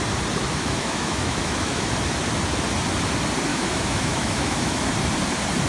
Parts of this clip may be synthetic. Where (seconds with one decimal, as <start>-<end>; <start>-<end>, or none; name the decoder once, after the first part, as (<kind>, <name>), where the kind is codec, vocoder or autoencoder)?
0.5-1.9 (autoencoder, DAC-VAE); 3.5-4.9